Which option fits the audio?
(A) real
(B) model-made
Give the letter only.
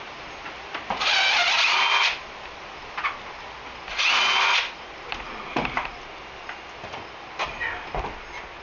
A